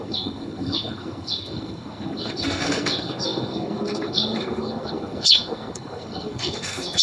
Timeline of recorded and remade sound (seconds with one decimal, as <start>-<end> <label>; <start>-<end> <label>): 0.0-7.0 remade